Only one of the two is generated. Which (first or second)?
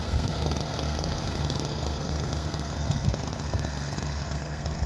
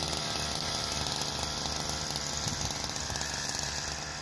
first